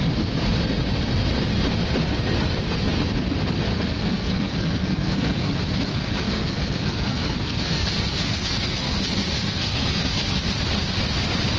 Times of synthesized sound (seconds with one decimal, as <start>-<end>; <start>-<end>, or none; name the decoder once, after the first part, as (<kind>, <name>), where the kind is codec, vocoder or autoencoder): 3.7-5.5 (codec, SNAC); 5.9-10.5